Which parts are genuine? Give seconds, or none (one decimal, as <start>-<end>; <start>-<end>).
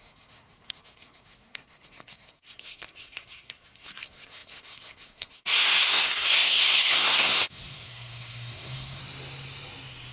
9.0-10.1